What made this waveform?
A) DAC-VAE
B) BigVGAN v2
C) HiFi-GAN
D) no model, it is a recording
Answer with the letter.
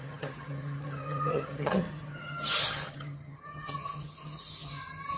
C